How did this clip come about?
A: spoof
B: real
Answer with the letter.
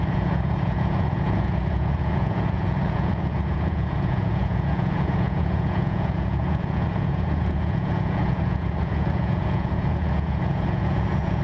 A